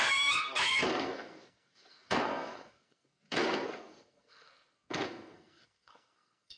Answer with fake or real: fake